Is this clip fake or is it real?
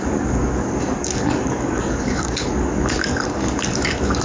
fake